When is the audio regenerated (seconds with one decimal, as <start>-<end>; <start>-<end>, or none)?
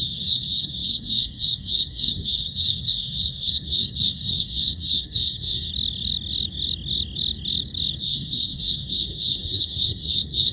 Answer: 0.0-5.7; 8.0-10.5